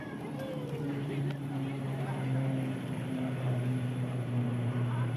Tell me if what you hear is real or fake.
fake